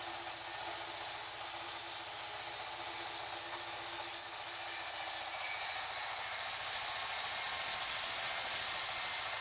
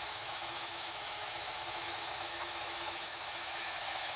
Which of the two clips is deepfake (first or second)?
second